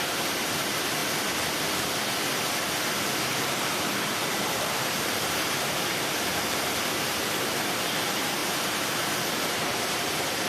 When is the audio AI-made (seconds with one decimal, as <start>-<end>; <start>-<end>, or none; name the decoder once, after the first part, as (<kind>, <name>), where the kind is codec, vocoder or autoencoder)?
0.0-1.0 (vocoder, BigVGAN v2); 3.4-6.3; 7.1-8.4; 9.3-10.5